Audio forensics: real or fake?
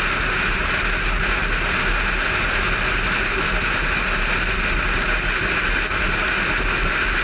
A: real